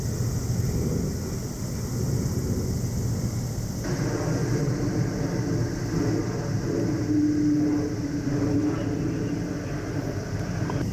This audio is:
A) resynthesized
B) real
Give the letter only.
B